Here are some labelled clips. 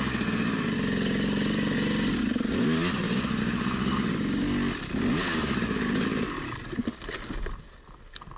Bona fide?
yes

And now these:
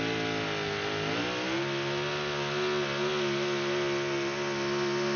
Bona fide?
yes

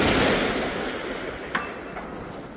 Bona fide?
yes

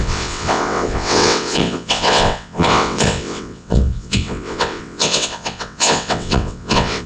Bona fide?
no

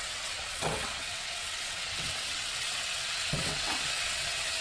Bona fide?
no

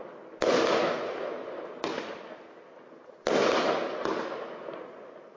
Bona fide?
yes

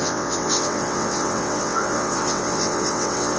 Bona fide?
no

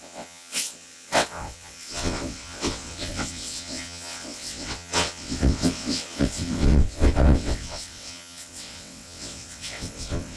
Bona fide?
no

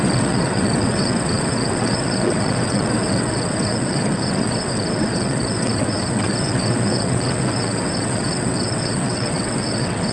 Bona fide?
no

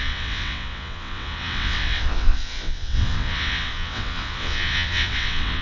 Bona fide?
no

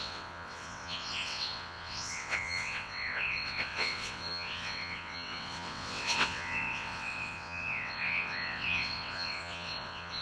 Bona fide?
no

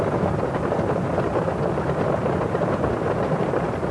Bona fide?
yes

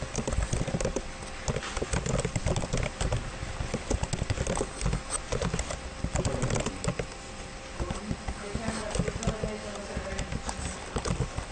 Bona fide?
yes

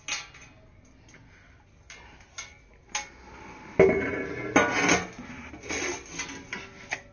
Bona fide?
yes